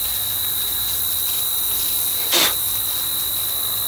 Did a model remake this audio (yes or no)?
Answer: no